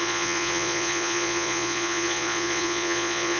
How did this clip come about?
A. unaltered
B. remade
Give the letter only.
B